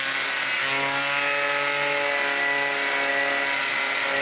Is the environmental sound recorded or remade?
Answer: recorded